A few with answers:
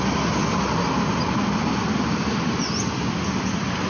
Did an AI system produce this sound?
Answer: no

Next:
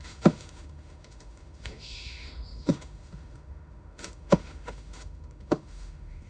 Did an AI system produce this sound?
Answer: yes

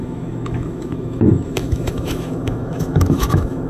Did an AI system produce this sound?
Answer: yes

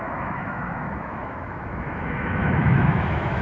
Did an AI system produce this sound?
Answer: yes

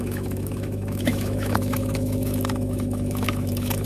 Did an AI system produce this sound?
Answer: yes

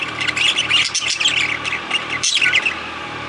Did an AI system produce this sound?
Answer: no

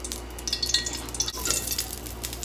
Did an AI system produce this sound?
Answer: no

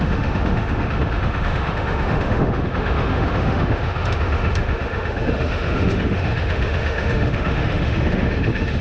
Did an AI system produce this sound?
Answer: yes